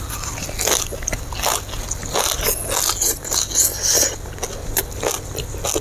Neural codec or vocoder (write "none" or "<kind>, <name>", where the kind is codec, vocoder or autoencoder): none